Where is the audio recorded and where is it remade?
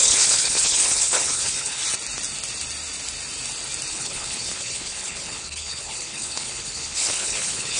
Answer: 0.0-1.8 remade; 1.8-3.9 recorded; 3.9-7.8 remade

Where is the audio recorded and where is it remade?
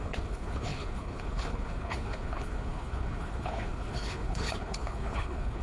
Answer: 0.0-5.6 remade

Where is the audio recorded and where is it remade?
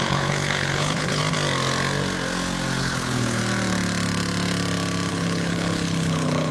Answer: 0.0-1.2 remade; 1.2-2.8 recorded; 2.8-3.4 remade; 3.4-5.1 recorded; 5.1-6.5 remade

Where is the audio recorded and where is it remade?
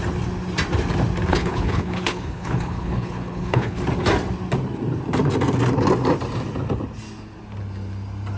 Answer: 0.0-1.3 recorded; 1.3-3.8 remade; 3.8-8.4 recorded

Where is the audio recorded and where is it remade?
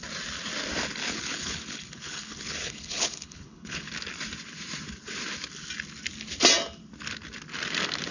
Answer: 0.0-1.0 recorded; 1.0-3.9 remade; 3.9-8.1 recorded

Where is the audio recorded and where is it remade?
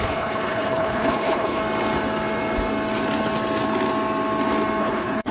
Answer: 0.0-1.6 remade; 1.6-4.8 recorded; 4.8-5.3 remade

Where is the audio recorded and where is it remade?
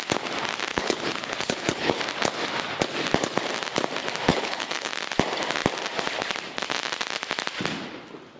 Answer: 0.0-0.7 recorded; 0.7-2.0 remade; 2.0-4.3 recorded; 4.3-4.9 remade; 4.9-8.4 recorded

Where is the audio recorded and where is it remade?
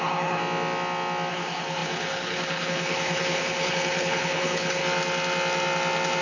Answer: 0.0-0.4 remade; 0.4-1.3 recorded; 1.3-4.8 remade; 4.8-6.2 recorded